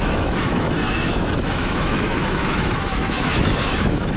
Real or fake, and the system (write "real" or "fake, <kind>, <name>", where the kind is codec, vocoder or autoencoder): fake, autoencoder, DAC-VAE